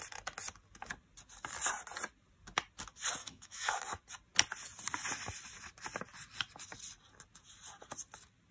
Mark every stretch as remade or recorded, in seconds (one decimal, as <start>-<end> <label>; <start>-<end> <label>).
0.0-3.2 recorded; 3.2-3.8 remade; 3.8-8.5 recorded